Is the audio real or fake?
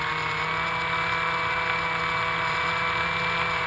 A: real